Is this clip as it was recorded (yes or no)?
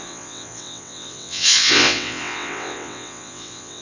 no